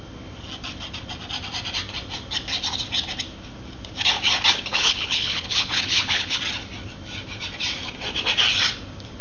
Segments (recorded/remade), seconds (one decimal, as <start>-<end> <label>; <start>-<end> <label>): 0.0-4.7 recorded; 4.7-6.4 remade; 6.4-9.2 recorded